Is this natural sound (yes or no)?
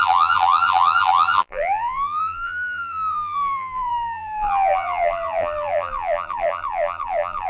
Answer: no